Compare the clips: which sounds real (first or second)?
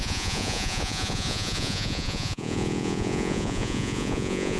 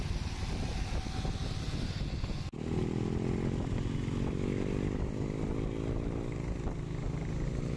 second